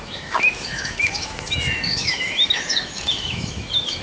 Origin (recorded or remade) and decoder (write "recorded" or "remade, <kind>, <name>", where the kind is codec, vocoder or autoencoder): remade, autoencoder, DAC-VAE